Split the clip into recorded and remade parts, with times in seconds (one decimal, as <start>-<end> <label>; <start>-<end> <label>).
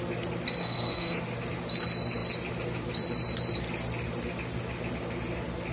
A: 0.0-0.6 recorded; 0.6-1.2 remade; 1.2-5.7 recorded